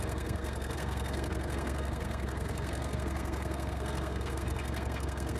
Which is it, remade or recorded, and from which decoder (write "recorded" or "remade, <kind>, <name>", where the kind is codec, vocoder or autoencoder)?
remade, codec, SNAC